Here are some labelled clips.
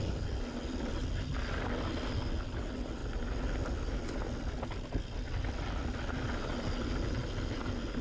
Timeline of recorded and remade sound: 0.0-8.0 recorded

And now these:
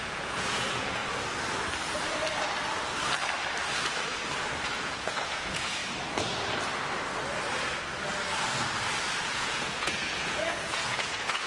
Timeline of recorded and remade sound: 0.0-1.0 remade; 1.0-4.7 recorded; 4.7-5.8 remade; 5.8-9.2 recorded; 9.2-11.5 remade

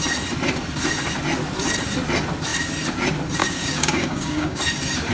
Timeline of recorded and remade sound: 0.0-3.4 recorded; 3.4-4.6 remade; 4.6-5.1 recorded